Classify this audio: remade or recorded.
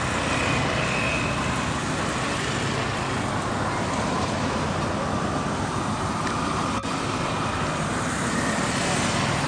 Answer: recorded